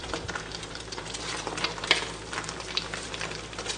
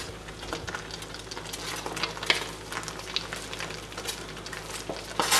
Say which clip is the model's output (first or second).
first